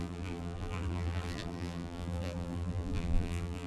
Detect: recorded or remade remade